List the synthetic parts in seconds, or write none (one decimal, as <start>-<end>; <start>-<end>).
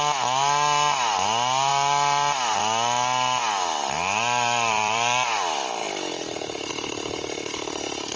1.7-2.6; 3.4-6.7